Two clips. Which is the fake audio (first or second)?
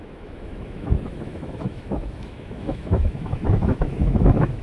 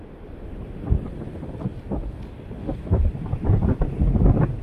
first